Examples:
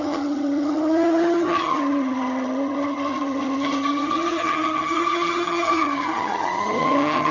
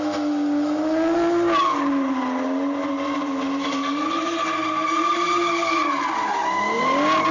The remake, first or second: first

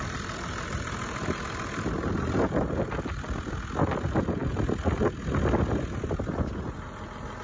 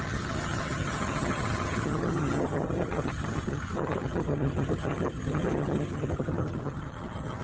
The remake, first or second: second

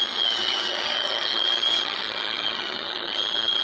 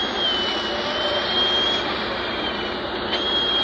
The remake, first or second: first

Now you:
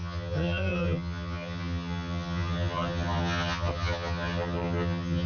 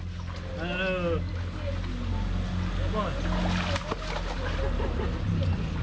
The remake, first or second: first